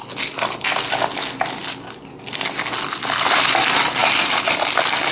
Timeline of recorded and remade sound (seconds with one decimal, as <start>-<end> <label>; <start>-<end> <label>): 0.0-5.1 recorded